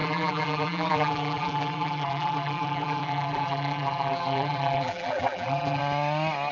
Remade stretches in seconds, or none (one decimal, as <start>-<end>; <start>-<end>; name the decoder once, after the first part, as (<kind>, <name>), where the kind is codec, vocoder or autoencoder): 0.0-5.8 (vocoder, BigVGAN v2)